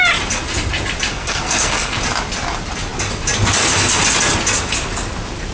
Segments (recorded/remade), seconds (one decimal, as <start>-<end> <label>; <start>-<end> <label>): 0.0-1.1 recorded; 1.1-2.0 remade; 2.0-5.5 recorded